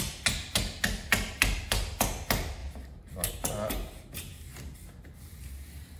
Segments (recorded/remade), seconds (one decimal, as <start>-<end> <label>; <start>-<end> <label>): 0.0-6.0 recorded